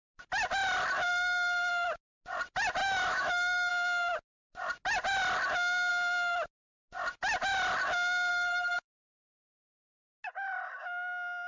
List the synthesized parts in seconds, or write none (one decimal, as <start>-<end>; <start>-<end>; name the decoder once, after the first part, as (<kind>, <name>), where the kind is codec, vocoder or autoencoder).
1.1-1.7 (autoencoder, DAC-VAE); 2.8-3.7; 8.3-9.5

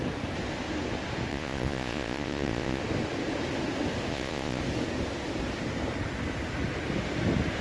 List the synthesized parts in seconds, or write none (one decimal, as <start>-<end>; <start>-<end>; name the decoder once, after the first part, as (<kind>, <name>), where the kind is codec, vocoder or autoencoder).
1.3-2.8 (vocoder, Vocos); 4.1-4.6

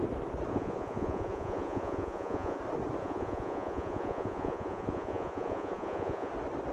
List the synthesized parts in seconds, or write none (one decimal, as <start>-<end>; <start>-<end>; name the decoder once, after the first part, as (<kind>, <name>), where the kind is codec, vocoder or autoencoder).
0.5-2.6 (vocoder, Vocos); 3.0-6.3

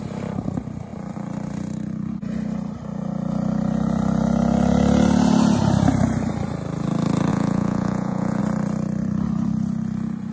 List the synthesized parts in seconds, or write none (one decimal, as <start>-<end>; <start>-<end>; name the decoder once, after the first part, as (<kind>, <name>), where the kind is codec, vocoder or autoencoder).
7.3-8.4 (vocoder, Vocos)

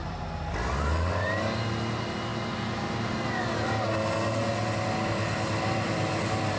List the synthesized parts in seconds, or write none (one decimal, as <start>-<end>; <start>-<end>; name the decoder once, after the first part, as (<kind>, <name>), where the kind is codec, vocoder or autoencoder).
none